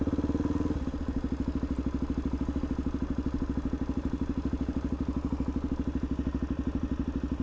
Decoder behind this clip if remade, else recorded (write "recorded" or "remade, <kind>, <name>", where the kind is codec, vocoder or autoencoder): recorded